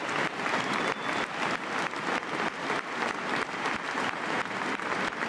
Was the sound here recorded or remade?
recorded